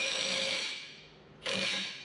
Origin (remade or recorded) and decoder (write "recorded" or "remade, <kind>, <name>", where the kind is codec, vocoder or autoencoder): remade, autoencoder, DAC-VAE